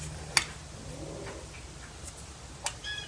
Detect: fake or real real